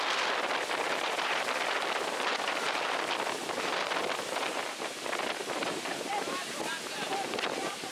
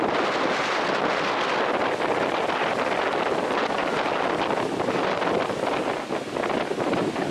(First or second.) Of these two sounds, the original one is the second